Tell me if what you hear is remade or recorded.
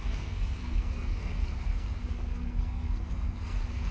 remade